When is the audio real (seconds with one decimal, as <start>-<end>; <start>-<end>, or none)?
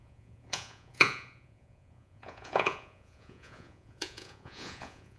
none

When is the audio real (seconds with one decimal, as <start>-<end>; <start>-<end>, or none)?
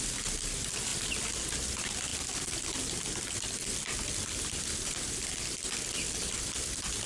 0.0-7.1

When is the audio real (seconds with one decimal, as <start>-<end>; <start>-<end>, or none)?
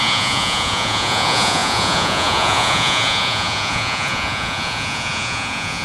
none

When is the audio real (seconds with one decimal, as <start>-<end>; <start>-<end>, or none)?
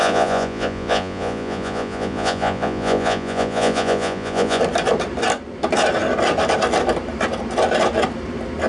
4.6-8.7